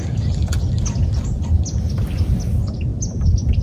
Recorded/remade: recorded